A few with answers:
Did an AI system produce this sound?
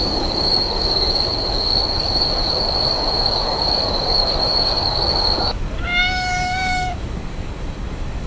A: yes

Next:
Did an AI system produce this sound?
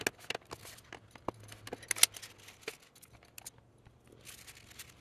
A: no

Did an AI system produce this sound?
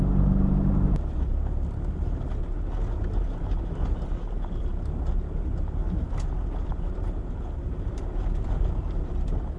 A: no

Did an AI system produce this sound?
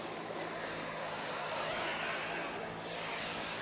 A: yes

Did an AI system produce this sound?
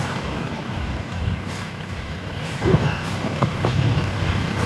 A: yes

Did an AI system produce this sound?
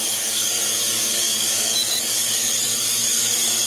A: yes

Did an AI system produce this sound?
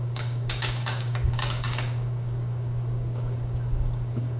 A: yes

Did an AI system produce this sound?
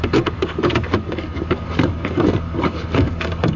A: yes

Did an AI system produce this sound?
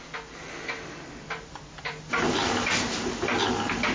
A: no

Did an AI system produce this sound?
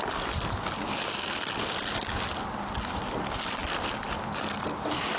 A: no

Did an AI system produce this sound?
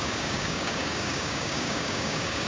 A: yes